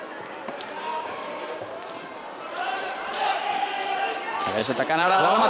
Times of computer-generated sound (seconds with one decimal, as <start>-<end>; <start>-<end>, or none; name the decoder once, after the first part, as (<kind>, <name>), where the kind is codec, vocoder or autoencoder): 0.9-3.7 (vocoder, BigVGAN v2); 4.6-5.5

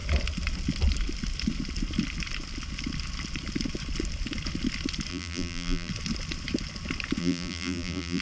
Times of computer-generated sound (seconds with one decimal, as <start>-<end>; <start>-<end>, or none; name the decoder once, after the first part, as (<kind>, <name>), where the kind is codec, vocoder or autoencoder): 5.1-5.9 (vocoder, BigVGAN v2); 7.2-8.2

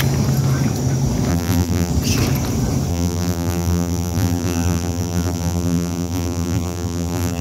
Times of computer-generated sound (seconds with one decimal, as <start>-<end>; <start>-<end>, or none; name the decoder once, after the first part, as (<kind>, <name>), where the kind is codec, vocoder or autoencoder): 1.3-1.9 (vocoder, BigVGAN v2); 2.9-7.4

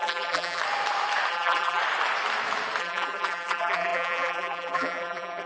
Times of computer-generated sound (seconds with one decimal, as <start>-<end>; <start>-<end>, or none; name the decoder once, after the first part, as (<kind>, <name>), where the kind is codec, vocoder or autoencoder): 0.0-0.6 (vocoder, BigVGAN v2); 1.3-1.8; 2.8-5.5

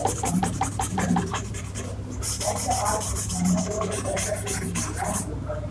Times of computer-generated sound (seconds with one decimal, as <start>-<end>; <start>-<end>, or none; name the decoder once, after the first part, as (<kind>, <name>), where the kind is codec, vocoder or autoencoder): 0.0-5.7 (vocoder, BigVGAN v2)